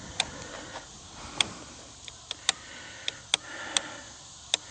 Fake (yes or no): no